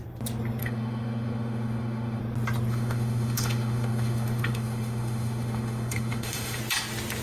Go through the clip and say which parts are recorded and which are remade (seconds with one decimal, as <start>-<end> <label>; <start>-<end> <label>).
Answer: 0.0-0.6 recorded; 0.6-2.2 remade; 2.2-2.7 recorded; 2.7-6.6 remade; 6.6-7.2 recorded